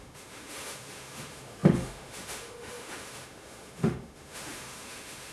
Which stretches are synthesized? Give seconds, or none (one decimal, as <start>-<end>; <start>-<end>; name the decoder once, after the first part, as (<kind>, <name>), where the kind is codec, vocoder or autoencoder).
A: 0.0-5.3 (autoencoder, DAC-VAE)